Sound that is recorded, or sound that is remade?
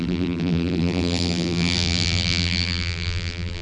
remade